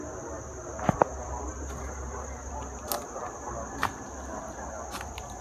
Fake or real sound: real